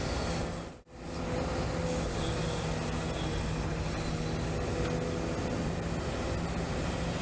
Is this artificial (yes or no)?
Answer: no